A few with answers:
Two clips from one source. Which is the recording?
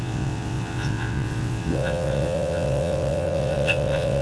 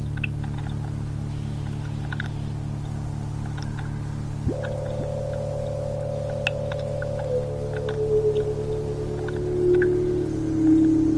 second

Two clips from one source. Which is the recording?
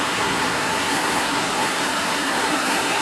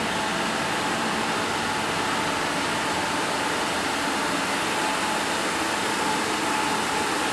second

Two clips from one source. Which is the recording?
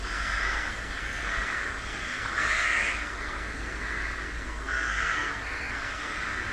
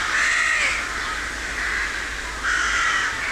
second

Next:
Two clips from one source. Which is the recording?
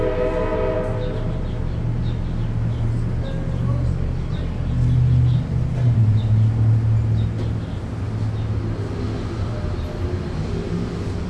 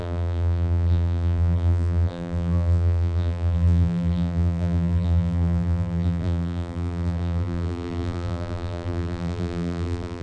first